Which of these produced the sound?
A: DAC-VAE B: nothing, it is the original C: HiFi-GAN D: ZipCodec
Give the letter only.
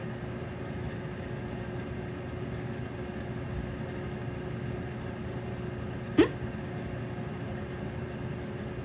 B